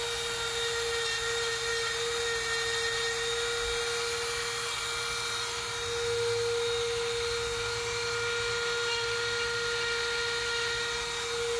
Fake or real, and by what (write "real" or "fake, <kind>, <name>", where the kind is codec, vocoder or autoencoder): real